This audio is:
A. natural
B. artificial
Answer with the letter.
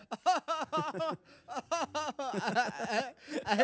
A